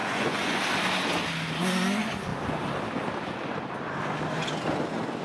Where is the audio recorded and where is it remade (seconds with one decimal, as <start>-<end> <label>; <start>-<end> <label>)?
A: 0.0-0.6 remade; 0.6-5.2 recorded